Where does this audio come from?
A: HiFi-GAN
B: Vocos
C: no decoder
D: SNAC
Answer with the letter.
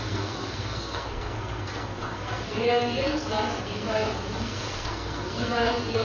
D